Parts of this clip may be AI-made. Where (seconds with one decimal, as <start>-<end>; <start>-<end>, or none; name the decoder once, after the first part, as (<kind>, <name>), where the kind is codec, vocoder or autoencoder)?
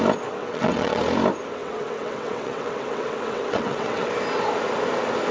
0.4-1.0 (vocoder, WaveNeXt); 1.6-4.1